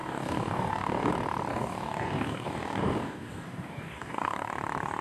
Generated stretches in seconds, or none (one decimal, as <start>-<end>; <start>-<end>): 0.0-1.1; 1.5-4.5

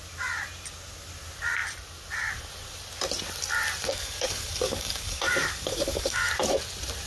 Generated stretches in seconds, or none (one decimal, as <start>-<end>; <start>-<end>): 3.9-6.3

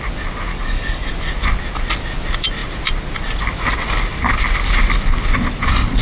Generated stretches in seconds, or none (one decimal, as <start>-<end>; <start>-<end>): 0.5-1.1

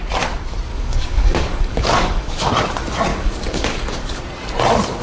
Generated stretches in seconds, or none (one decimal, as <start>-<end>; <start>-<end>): 0.7-2.5; 3.1-4.2

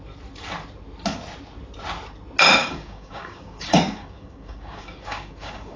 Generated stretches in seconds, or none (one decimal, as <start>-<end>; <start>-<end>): 2.6-5.8

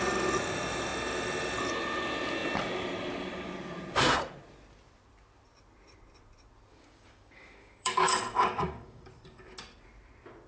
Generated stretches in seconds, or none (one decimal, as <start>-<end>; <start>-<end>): 6.7-9.1